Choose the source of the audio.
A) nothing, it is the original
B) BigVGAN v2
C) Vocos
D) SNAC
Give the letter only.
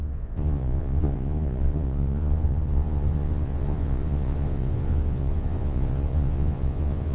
C